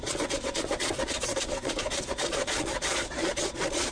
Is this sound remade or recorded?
remade